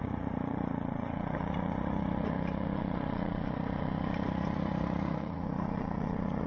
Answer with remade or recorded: remade